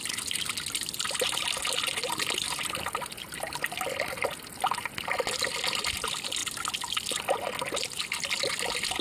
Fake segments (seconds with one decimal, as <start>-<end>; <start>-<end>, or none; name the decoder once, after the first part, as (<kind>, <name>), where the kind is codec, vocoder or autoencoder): none

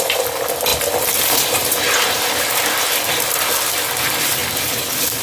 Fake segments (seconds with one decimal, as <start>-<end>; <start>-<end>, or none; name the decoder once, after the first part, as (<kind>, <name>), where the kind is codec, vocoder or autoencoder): none

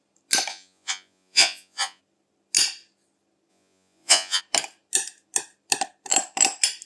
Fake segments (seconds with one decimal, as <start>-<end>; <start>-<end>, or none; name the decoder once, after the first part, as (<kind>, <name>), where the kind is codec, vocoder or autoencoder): 0.5-2.0 (vocoder, Vocos); 3.5-4.4

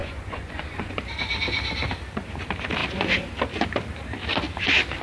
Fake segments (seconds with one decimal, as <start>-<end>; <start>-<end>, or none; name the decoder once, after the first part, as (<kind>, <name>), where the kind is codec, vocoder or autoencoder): 0.0-1.0 (vocoder, Vocos)

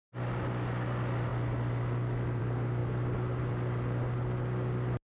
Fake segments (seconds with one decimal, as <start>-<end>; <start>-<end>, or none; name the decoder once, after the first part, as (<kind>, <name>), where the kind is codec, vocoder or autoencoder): none

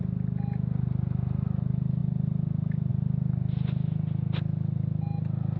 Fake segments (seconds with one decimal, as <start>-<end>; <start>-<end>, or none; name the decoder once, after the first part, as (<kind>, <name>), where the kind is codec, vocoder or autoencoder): none

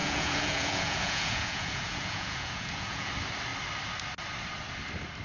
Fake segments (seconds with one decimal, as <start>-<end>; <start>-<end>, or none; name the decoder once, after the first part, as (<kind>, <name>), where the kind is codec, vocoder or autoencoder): 0.0-3.1 (vocoder, Vocos)